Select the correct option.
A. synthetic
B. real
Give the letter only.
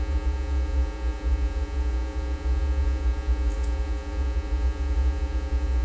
A